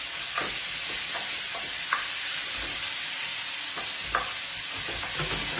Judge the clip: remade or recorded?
recorded